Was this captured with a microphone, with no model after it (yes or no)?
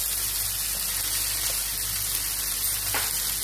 yes